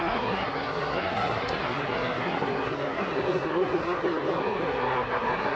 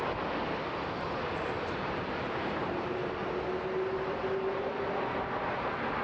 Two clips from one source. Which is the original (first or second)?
second